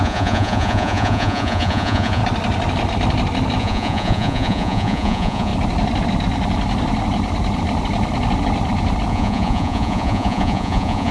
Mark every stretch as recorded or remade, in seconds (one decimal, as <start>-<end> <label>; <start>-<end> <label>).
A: 0.0-2.2 remade; 2.2-3.6 recorded; 3.6-5.5 remade; 5.5-9.1 recorded; 9.1-11.1 remade